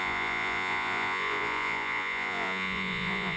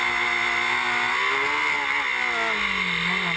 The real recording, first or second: second